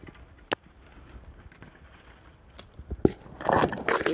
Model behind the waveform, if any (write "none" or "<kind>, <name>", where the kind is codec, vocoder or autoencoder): none